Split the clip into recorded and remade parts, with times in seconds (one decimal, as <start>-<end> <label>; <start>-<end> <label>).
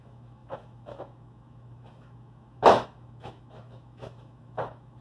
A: 0.0-5.0 remade